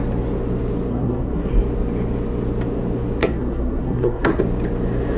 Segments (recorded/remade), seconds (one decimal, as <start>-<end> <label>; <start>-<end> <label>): 0.0-0.9 recorded; 0.9-1.5 remade; 1.5-3.2 recorded; 3.2-4.4 remade; 4.4-5.2 recorded